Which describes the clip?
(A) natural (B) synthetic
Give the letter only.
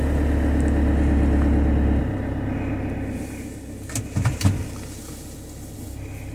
A